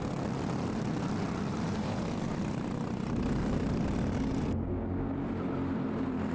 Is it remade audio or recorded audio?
recorded